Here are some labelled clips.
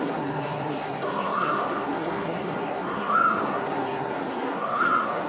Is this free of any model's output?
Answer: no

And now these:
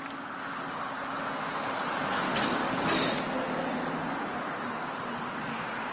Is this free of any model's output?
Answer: yes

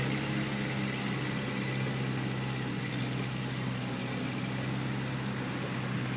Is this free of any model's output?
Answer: yes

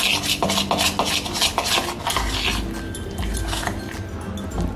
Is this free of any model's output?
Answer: yes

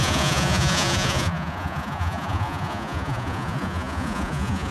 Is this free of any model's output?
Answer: no